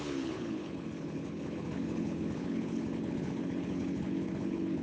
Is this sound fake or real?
fake